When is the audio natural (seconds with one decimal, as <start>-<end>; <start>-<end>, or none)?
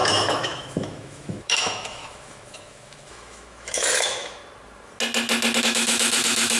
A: 4.4-5.6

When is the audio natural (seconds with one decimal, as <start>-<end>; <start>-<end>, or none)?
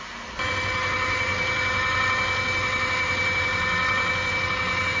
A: 0.0-5.0